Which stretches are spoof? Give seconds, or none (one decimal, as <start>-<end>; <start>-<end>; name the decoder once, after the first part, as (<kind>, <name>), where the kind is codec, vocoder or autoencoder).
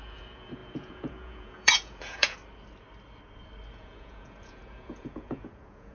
0.0-2.4 (vocoder, Vocos); 3.7-5.9